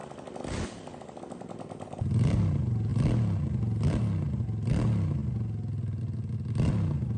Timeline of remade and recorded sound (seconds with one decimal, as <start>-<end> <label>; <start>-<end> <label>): 0.0-7.2 recorded